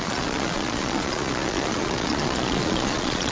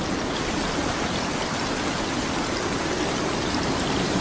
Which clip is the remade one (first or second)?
first